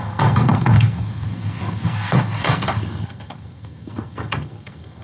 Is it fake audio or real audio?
fake